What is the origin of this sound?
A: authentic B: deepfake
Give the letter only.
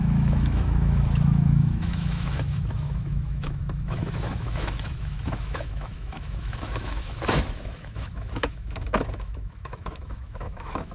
B